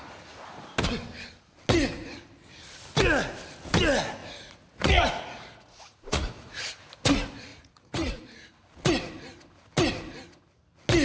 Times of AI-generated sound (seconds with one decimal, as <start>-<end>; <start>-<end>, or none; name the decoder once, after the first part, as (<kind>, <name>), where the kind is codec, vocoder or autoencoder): 4.2-6.6 (vocoder, Vocos); 7.5-8.2